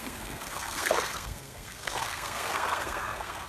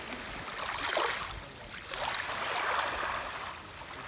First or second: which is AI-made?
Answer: first